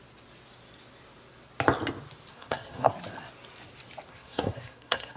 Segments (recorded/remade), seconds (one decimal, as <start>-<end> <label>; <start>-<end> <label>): 0.0-2.3 recorded; 2.3-2.9 remade; 2.9-4.1 recorded; 4.1-5.2 remade